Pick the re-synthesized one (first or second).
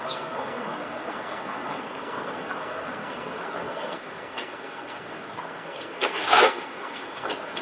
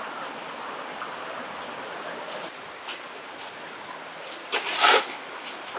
first